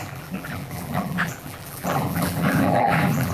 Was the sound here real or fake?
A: fake